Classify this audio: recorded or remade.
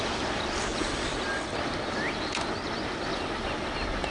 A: recorded